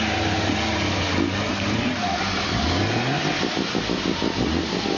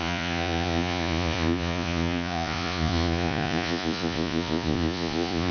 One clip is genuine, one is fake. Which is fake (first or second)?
second